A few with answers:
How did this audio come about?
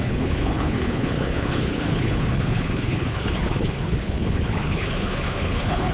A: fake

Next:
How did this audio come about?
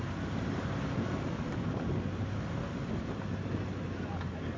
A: real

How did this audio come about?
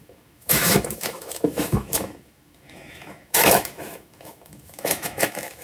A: fake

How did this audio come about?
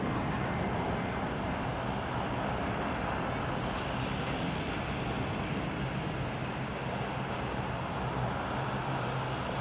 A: real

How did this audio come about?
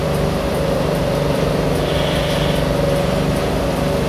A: fake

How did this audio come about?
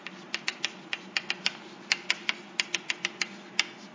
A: real